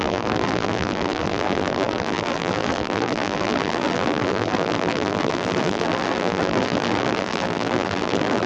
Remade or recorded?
remade